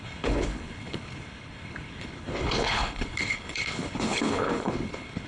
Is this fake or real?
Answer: fake